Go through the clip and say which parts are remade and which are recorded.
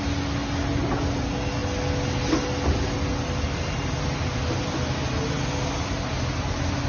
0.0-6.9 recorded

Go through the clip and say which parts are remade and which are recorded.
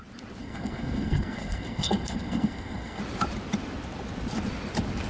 0.0-0.4 recorded; 0.4-3.0 remade; 3.0-5.1 recorded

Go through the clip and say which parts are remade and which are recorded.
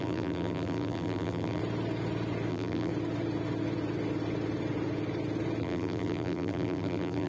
0.0-1.6 remade; 1.6-2.5 recorded; 2.5-2.9 remade; 2.9-5.6 recorded; 5.6-7.3 remade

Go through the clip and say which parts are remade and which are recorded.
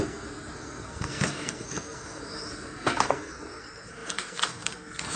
0.0-5.2 remade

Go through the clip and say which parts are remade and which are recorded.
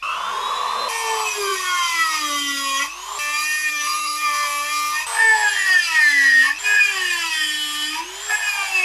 0.0-3.7 recorded; 3.7-4.2 remade; 4.2-8.8 recorded